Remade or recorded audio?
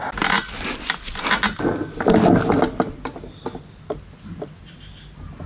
recorded